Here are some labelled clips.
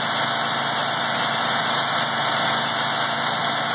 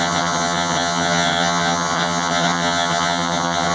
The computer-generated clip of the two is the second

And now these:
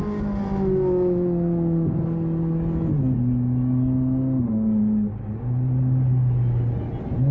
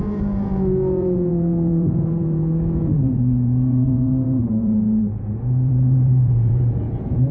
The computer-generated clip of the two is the second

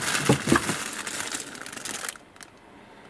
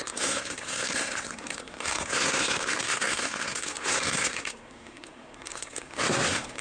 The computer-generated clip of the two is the second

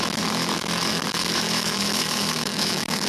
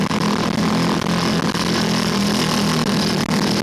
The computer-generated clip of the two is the first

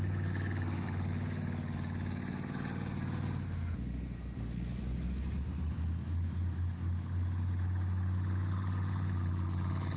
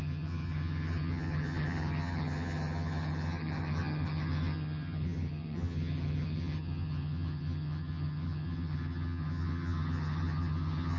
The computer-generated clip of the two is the second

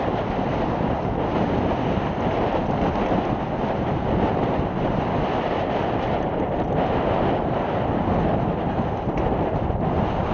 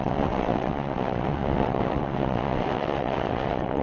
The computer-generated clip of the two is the second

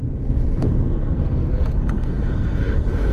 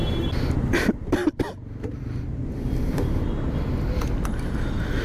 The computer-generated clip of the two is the first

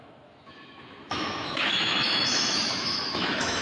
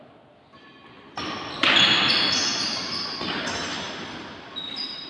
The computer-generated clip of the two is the first